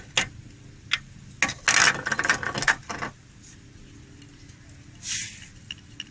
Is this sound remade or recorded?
recorded